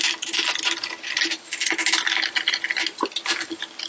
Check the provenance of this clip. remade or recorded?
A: recorded